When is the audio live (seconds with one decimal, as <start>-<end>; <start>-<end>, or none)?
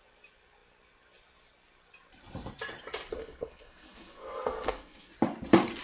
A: 0.0-3.1; 5.1-5.8